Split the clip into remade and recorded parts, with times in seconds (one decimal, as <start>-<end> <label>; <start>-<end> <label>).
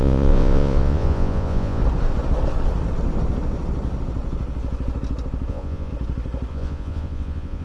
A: 0.0-1.8 remade; 1.8-5.5 recorded; 5.5-5.9 remade; 5.9-6.5 recorded; 6.5-7.6 remade